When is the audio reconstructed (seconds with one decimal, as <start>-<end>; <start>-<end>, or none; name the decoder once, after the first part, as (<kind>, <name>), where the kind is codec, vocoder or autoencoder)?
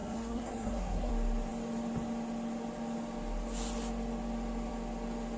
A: 0.0-1.1 (codec, SNAC)